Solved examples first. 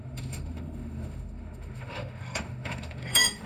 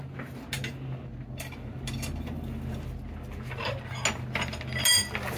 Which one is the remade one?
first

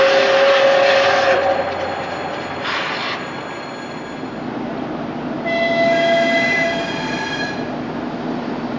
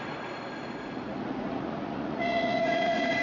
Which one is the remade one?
second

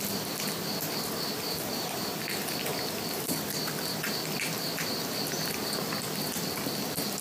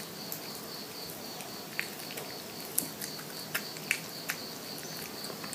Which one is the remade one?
first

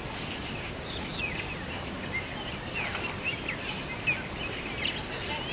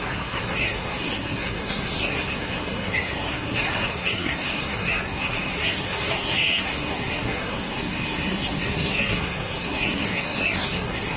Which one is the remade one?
second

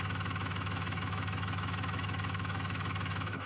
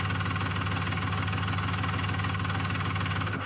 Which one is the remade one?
first